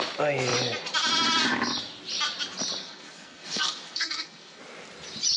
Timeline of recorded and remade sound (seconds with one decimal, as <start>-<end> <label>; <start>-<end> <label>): 0.0-2.8 recorded; 2.8-4.6 remade; 4.6-5.4 recorded